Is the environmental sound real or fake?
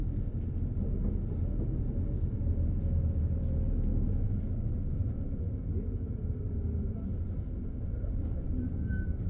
real